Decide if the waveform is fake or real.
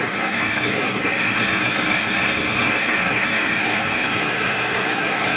fake